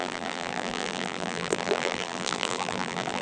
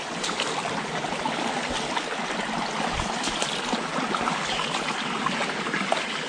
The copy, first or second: first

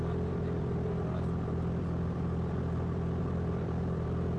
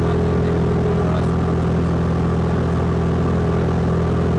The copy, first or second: first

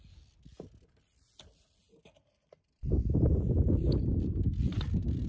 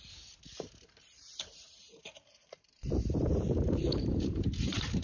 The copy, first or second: second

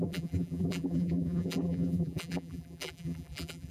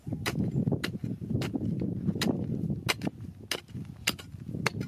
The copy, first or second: first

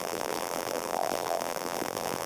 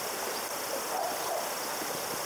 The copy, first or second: first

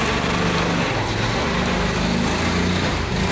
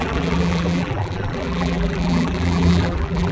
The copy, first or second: second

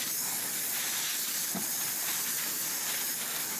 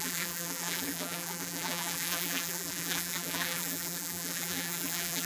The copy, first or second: second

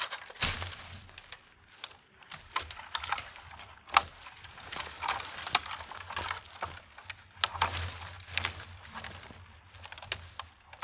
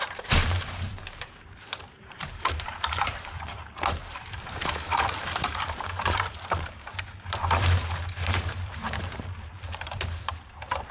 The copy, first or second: second